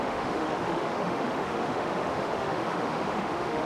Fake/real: fake